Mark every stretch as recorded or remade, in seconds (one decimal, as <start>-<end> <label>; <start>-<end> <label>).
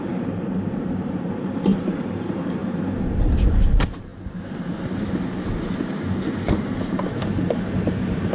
0.0-4.1 remade; 4.1-6.6 recorded; 6.6-8.3 remade